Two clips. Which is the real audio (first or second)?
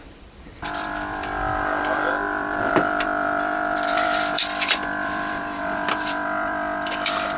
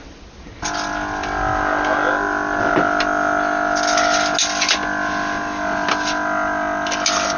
second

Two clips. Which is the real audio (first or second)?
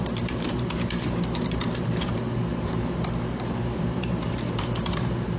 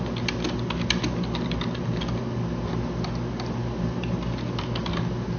second